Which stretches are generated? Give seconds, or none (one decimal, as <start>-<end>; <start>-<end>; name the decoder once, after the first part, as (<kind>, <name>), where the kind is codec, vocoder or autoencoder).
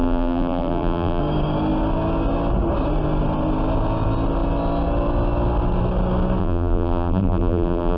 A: 0.0-1.2 (vocoder, BigVGAN v2); 6.4-8.0